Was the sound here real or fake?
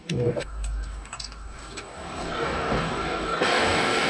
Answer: fake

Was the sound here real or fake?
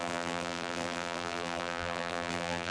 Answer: fake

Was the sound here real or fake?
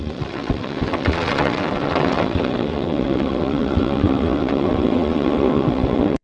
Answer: fake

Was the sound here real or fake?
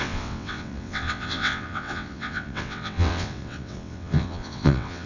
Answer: fake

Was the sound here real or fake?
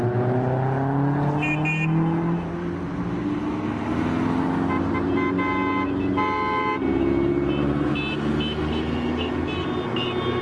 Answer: real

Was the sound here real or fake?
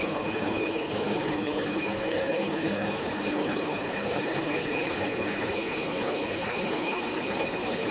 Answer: fake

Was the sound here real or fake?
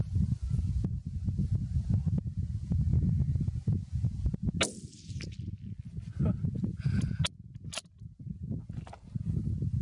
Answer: real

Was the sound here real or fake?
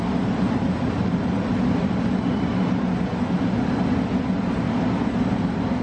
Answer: real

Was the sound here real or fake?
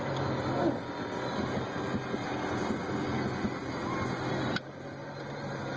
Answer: real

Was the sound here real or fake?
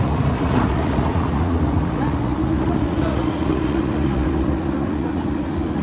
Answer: fake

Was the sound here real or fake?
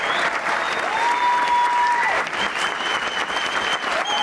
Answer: real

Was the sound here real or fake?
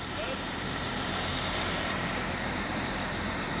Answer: fake